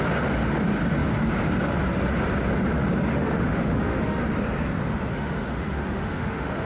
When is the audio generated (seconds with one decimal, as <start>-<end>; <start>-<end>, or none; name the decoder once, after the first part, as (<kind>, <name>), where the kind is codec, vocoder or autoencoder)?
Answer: 3.1-4.2 (autoencoder, DAC-VAE); 5.1-6.7